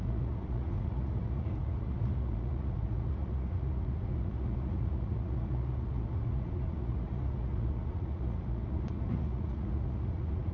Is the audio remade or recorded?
remade